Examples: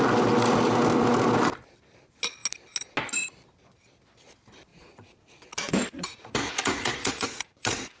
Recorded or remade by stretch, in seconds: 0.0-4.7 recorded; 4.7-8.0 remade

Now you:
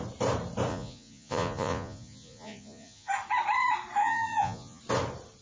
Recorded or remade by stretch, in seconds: 0.0-0.7 recorded; 0.7-3.1 remade; 3.1-4.0 recorded; 4.0-4.8 remade; 4.8-5.4 recorded